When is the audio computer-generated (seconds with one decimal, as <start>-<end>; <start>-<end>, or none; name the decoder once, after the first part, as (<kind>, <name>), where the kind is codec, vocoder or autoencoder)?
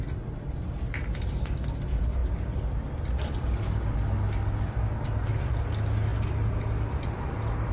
none